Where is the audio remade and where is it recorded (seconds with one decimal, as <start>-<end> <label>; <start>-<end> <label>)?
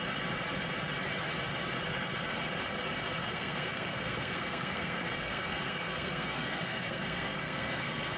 0.0-3.2 recorded; 3.2-8.2 remade